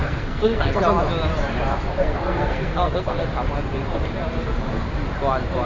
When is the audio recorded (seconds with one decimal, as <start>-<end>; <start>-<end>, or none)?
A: 0.8-2.0; 3.2-5.7